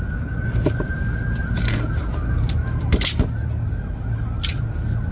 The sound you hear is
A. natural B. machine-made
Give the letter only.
A